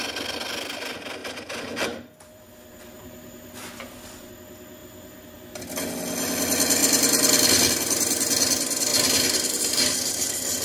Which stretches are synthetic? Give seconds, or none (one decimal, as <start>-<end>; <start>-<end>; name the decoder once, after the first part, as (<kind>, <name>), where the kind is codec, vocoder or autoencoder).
1.2-4.3 (vocoder, BigVGAN v2); 4.8-5.6; 8.9-9.6